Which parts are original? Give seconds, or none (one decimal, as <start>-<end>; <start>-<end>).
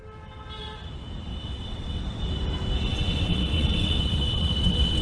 0.0-1.3; 2.0-2.9